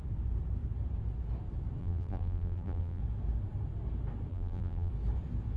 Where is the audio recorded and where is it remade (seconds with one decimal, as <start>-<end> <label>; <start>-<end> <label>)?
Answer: 0.0-1.8 recorded; 1.8-3.0 remade; 3.0-4.3 recorded; 4.3-4.9 remade; 4.9-5.6 recorded